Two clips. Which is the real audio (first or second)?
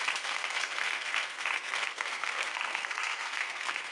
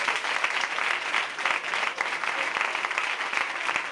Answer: second